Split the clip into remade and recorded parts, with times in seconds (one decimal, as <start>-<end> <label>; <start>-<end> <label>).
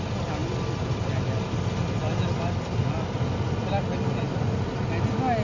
0.0-5.4 recorded